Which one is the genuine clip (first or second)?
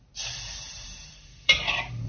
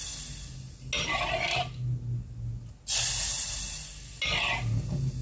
second